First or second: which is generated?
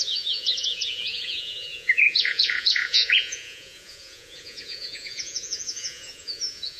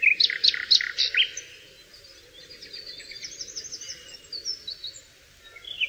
first